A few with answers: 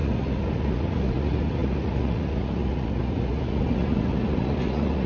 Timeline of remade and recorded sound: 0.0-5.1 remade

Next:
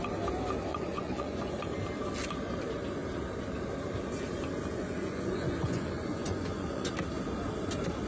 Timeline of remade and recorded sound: 0.0-0.7 recorded; 0.7-1.5 remade; 1.5-4.7 recorded; 4.7-6.9 remade; 6.9-8.1 recorded

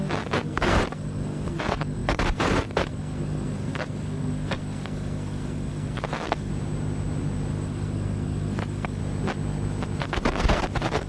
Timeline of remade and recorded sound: 0.0-6.5 remade; 6.5-7.5 recorded; 7.5-9.0 remade; 9.0-10.0 recorded; 10.0-11.1 remade

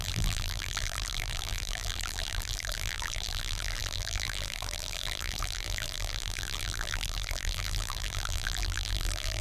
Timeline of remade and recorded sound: 0.0-9.4 remade

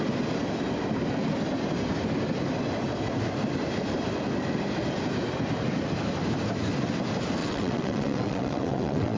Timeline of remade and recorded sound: 0.0-7.4 recorded; 7.4-9.2 remade

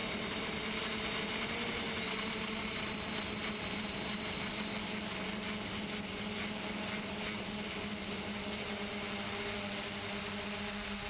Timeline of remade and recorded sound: 0.0-4.7 remade; 4.7-11.1 recorded

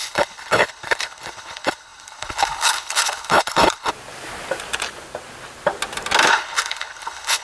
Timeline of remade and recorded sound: 0.0-3.9 remade; 3.9-6.3 recorded; 6.3-7.4 remade